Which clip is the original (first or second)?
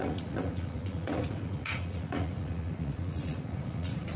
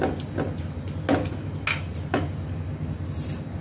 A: second